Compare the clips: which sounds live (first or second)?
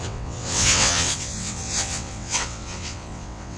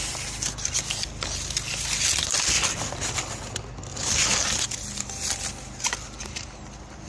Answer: second